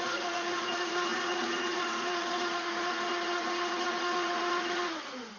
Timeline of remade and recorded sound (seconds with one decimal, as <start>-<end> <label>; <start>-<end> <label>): 0.0-5.4 remade